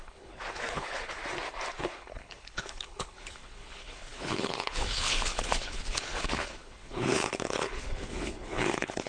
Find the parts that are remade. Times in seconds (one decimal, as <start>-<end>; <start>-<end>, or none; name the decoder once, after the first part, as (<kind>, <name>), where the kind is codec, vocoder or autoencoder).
0.0-1.2 (codec, HILCodec); 1.8-9.1